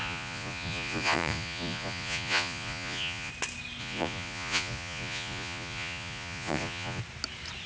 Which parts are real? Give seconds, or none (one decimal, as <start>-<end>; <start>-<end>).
3.3-3.8; 7.0-7.7